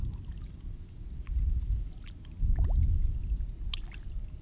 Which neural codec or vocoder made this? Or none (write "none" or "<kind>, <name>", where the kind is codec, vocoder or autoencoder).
none